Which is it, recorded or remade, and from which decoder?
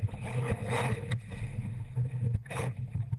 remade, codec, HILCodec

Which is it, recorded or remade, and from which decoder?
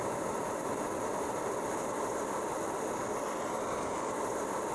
recorded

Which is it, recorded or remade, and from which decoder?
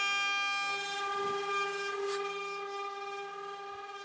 recorded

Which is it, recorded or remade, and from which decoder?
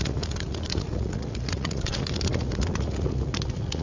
remade, vocoder, Vocos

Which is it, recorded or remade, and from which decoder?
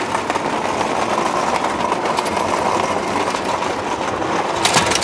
recorded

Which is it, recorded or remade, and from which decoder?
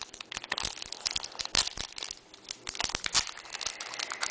recorded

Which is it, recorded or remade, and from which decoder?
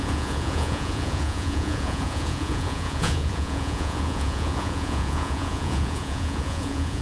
remade, vocoder, Vocos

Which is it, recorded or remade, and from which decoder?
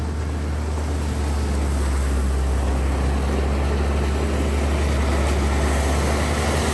recorded